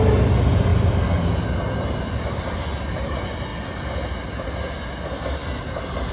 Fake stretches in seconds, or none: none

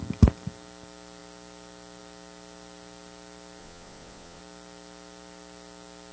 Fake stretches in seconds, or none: 3.6-4.4

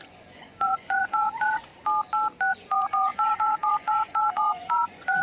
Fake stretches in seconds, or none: 0.0-1.7; 2.5-5.2

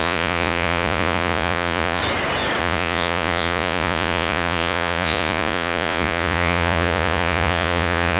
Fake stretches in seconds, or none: 0.0-2.0; 2.6-8.2

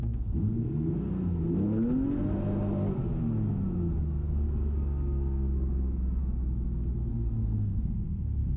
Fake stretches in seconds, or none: 0.0-1.4; 4.0-6.2; 7.1-8.6

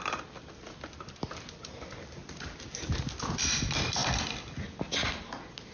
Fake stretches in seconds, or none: none